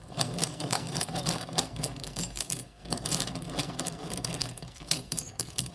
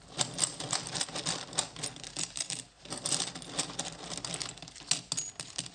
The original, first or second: second